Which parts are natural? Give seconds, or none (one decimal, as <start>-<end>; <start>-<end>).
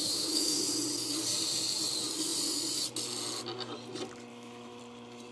0.6-4.3; 4.8-5.3